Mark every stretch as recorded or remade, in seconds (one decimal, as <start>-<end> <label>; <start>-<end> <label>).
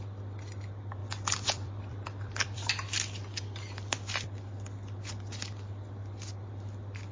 0.0-1.0 recorded; 1.0-2.7 remade; 2.7-7.1 recorded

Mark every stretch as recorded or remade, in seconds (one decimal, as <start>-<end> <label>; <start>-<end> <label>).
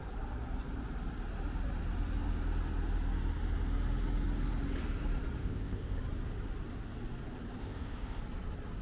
0.0-5.4 recorded; 5.4-6.0 remade; 6.0-7.6 recorded; 7.6-8.2 remade; 8.2-8.8 recorded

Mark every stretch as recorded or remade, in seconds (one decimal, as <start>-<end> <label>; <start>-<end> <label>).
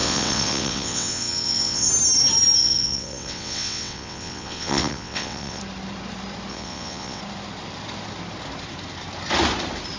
0.0-1.9 remade; 1.9-2.6 recorded; 2.6-5.6 remade; 5.6-6.5 recorded; 6.5-7.2 remade; 7.2-10.0 recorded